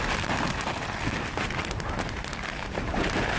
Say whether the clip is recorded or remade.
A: recorded